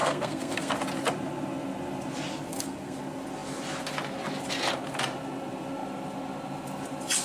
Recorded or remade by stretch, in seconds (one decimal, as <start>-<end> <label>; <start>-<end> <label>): 0.0-0.7 remade; 0.7-2.3 recorded; 2.3-3.0 remade; 3.0-7.2 recorded